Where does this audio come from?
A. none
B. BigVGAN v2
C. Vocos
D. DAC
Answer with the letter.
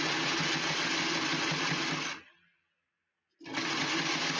A